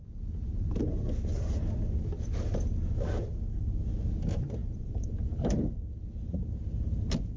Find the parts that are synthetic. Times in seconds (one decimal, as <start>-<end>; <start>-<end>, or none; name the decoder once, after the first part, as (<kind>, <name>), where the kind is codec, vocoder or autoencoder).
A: 4.6-5.1 (vocoder, Vocos)

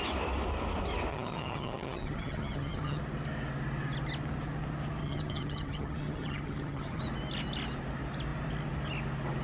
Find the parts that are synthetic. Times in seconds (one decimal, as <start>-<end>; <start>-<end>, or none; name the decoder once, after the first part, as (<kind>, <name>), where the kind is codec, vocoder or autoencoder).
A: 1.1-3.0 (vocoder, HiFi-GAN); 5.0-7.0

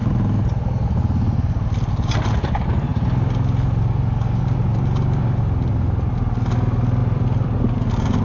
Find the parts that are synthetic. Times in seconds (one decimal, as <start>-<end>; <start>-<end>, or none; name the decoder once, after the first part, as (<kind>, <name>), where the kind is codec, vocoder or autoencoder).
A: 7.0-7.6 (vocoder, BigVGAN v2)

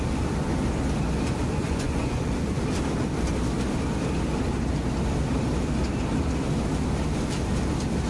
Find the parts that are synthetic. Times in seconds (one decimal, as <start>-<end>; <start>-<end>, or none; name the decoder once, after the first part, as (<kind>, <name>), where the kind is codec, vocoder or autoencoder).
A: 1.6-2.6 (vocoder, Vocos)

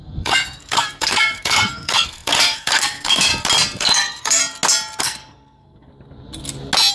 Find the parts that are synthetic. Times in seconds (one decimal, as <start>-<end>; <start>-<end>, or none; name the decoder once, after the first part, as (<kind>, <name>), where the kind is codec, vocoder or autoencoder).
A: 0.0-3.3 (codec, SNAC); 3.8-4.4; 5.0-5.9